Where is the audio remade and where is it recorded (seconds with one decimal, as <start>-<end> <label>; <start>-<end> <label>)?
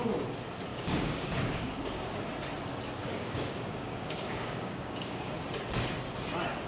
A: 0.0-0.7 recorded; 0.7-2.3 remade; 2.3-3.0 recorded; 3.0-5.3 remade; 5.3-6.7 recorded